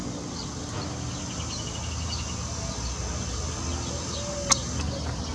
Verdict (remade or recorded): recorded